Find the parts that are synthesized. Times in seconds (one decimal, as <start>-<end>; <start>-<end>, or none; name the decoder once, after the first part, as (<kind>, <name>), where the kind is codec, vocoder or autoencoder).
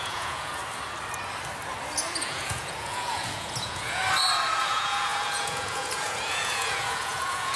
0.0-0.6 (vocoder, Vocos); 2.2-4.0; 4.6-7.6